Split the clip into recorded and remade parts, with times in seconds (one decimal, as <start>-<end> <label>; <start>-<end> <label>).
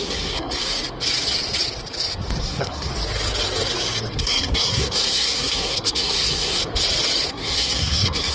0.0-0.7 remade; 0.7-2.4 recorded; 2.4-2.9 remade; 2.9-4.1 recorded; 4.1-6.6 remade; 6.6-7.3 recorded; 7.3-8.3 remade